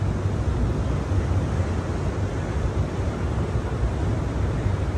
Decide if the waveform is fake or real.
real